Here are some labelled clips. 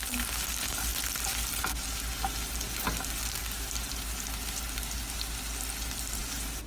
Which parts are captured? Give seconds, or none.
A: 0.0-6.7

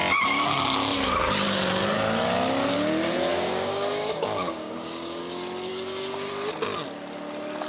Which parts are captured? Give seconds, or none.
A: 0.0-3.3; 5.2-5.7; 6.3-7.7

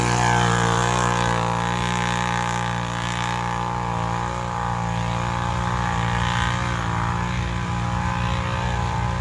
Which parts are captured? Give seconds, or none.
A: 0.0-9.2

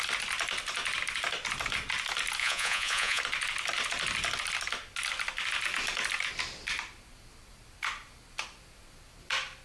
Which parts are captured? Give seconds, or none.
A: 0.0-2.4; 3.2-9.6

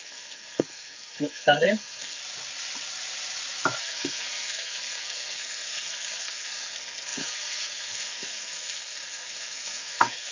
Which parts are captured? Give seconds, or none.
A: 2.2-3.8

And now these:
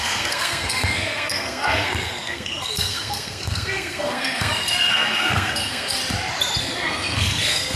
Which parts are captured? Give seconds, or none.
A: 6.0-6.6

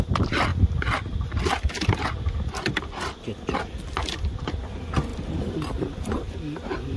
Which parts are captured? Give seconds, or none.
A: 0.0-7.0